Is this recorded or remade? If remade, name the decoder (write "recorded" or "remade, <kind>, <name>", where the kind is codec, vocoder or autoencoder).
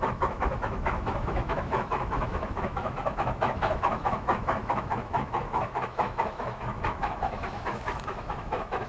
remade, autoencoder, DAC-VAE